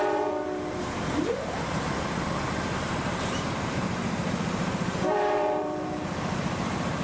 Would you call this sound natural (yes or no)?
no